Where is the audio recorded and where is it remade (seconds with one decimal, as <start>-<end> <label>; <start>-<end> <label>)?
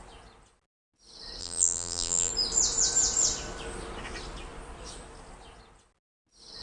0.0-1.4 recorded; 1.4-2.3 remade; 2.3-6.6 recorded